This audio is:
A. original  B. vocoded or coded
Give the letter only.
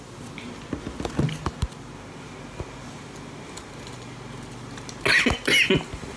A